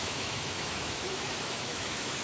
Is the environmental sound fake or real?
fake